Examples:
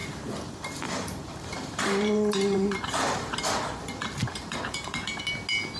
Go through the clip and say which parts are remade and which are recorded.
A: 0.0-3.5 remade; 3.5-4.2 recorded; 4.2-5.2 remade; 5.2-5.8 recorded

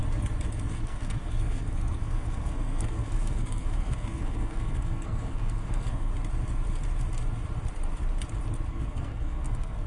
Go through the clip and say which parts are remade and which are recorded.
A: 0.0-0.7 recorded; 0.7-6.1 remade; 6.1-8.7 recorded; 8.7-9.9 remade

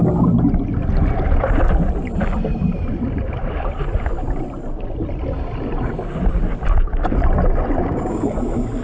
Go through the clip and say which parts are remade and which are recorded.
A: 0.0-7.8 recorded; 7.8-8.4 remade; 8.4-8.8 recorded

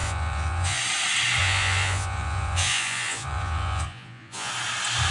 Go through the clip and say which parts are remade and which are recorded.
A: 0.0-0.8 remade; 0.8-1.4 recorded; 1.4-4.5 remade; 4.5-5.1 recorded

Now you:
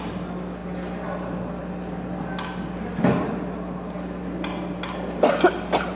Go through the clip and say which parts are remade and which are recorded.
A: 0.0-6.0 recorded

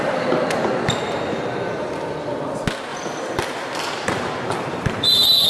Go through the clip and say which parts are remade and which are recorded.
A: 0.0-2.9 recorded; 2.9-5.5 remade